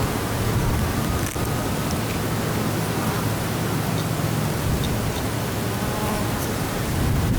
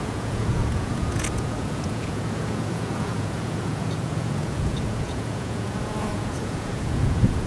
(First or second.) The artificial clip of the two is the second